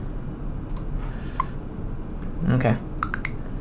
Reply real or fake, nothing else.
real